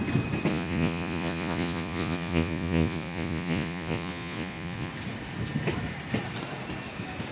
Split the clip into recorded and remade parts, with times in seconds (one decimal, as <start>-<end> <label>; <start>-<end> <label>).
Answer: 0.0-0.5 recorded; 0.5-4.9 remade; 4.9-7.3 recorded